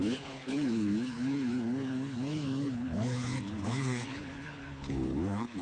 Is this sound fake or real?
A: fake